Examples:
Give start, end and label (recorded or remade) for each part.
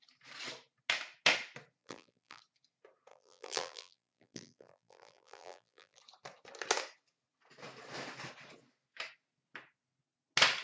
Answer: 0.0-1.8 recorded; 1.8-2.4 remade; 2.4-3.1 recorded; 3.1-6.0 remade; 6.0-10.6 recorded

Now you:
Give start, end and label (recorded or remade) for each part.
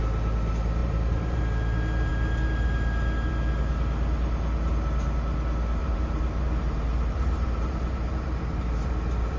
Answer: 0.0-0.8 recorded; 0.8-1.4 remade; 1.4-5.8 recorded; 5.8-9.4 remade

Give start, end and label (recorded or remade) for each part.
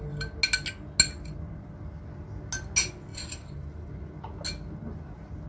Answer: 0.0-3.1 recorded; 3.1-3.9 remade; 3.9-5.5 recorded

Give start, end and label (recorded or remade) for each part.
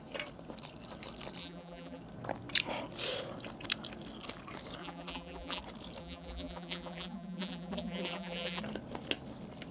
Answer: 0.0-1.4 recorded; 1.4-2.0 remade; 2.0-4.8 recorded; 4.8-5.6 remade; 5.6-6.0 recorded; 6.0-8.6 remade; 8.6-9.7 recorded